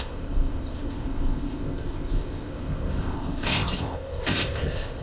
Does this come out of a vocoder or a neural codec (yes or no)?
yes